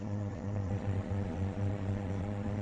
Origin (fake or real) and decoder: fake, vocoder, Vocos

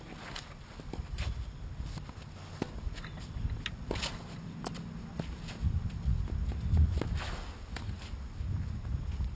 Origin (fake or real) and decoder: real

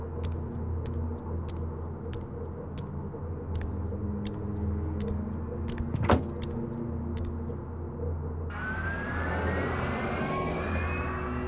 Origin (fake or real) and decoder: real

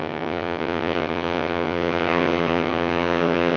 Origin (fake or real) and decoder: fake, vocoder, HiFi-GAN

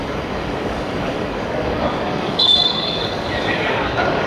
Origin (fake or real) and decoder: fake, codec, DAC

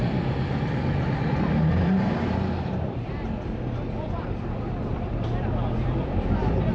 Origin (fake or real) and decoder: fake, vocoder, BigVGAN v2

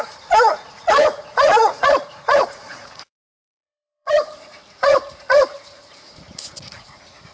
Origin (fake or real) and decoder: fake, vocoder, Vocos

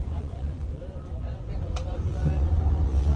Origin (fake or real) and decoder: fake, vocoder, Vocos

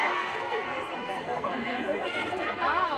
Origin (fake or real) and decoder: fake, codec, SNAC